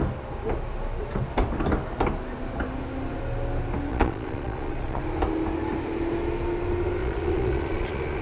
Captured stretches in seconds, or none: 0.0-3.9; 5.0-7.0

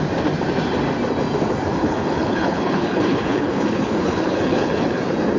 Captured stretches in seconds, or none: 0.0-1.8; 5.0-5.4

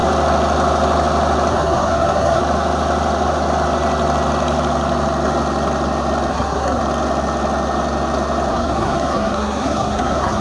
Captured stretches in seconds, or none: 0.0-1.5; 2.4-6.3; 6.8-8.5

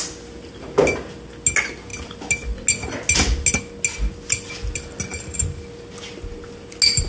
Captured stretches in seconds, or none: 0.0-7.1

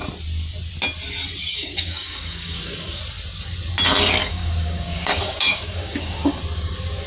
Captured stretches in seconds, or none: 0.0-1.5; 3.0-4.2; 6.4-7.1

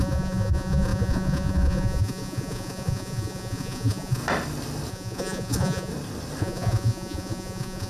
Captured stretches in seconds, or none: 4.2-4.9; 5.9-6.4

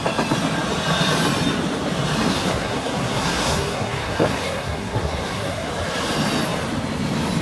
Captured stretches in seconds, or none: 0.0-2.3; 5.7-7.4